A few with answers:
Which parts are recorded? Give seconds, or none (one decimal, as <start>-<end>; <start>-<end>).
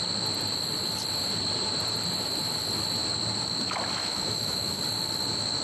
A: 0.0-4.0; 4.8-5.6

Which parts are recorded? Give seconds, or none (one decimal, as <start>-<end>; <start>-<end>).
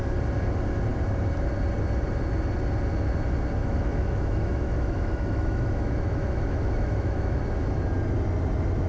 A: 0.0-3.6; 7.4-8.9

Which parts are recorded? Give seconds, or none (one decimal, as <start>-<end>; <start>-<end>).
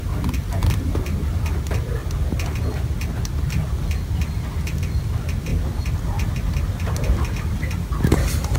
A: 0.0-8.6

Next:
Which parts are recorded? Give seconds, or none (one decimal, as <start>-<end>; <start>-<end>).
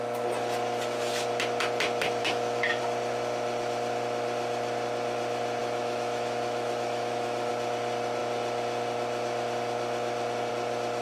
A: 0.0-2.2; 2.8-5.6; 7.5-11.0